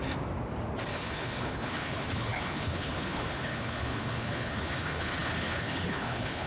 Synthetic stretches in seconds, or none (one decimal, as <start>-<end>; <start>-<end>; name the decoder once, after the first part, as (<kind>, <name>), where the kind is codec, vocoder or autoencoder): 0.9-6.5 (codec, HILCodec)